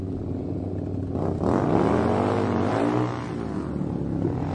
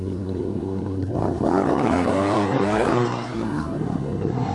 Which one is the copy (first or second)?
second